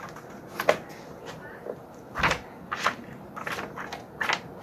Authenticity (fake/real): real